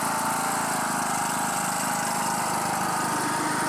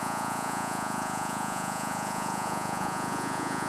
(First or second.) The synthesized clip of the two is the second